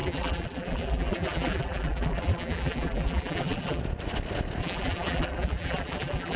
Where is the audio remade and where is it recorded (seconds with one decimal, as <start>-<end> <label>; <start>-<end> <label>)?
0.0-3.8 remade; 3.8-4.6 recorded; 4.6-6.4 remade